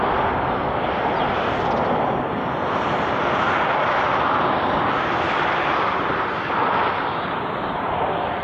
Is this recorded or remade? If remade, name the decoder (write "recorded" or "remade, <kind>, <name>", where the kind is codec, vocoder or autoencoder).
recorded